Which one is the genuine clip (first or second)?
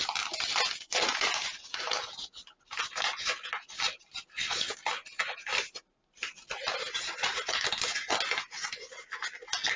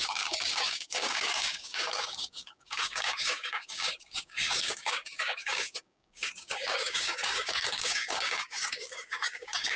first